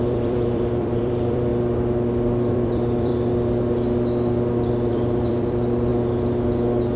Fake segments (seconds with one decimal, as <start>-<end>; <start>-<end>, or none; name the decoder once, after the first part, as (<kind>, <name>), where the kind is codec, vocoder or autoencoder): 0.0-1.5 (vocoder, BigVGAN v2); 2.5-3.1; 4.7-5.9